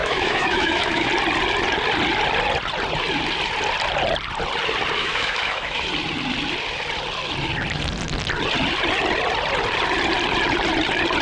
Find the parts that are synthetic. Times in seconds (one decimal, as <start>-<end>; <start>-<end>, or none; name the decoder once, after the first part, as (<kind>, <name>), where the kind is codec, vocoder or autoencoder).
0.0-1.1 (autoencoder, DAC-VAE); 5.0-5.8